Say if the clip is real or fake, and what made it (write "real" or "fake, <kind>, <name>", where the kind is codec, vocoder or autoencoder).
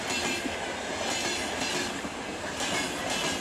real